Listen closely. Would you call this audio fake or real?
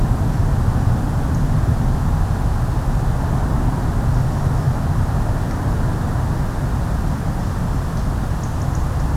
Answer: real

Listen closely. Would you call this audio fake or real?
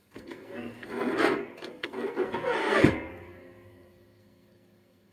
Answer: fake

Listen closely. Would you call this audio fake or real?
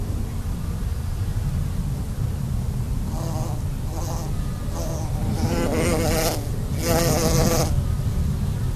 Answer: real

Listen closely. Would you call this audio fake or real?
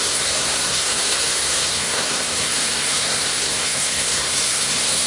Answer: fake